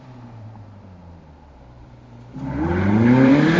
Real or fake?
fake